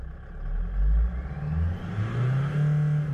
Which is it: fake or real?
real